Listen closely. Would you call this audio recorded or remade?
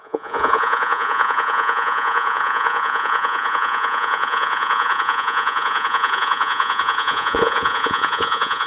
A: remade